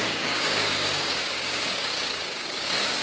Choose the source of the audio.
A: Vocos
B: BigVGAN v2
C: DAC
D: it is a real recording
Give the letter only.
C